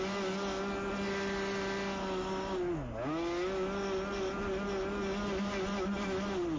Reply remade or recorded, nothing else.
recorded